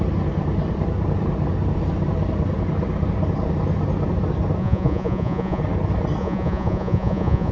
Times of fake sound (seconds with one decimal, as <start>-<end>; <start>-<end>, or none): 4.6-5.6; 6.2-7.5

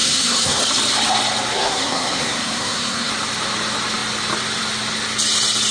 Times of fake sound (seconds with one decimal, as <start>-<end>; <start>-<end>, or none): 0.0-0.6; 1.5-3.1

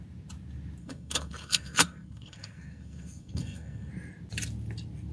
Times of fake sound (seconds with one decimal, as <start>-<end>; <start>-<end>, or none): 0.8-3.9

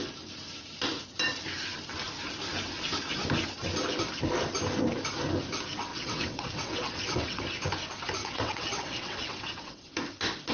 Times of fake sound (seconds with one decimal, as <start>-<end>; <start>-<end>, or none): 5.9-7.4; 8.2-9.9

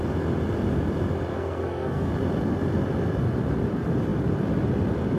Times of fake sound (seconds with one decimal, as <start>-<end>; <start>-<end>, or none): 1.3-2.1

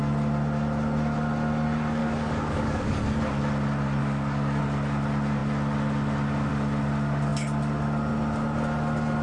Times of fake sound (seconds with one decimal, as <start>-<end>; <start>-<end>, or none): 2.0-3.0; 4.0-4.6